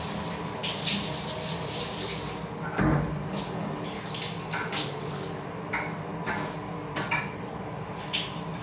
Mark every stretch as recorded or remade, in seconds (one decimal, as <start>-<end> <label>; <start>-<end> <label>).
0.0-8.6 recorded